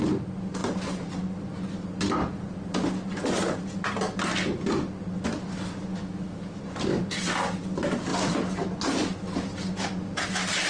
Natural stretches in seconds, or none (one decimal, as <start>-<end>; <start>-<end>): 0.0-5.9; 6.6-10.7